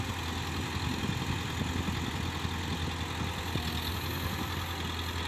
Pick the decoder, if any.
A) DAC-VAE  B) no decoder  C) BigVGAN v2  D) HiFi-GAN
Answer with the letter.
B